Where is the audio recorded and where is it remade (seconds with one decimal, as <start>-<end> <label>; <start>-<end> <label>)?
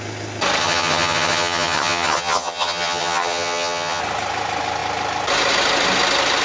0.0-0.6 recorded; 0.6-4.0 remade; 4.0-6.4 recorded